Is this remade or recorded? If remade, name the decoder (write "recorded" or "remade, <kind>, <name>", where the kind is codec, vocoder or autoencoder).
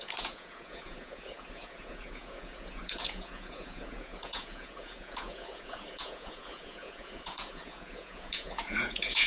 remade, vocoder, Vocos